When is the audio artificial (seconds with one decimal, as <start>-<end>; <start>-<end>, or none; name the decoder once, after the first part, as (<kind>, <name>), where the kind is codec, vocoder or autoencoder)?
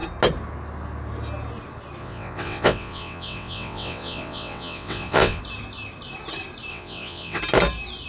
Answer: 2.0-5.4 (vocoder, WaveNeXt); 6.7-7.4